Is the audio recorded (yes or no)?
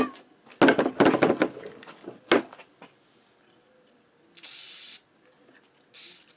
yes